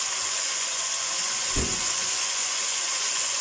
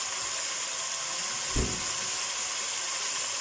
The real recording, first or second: second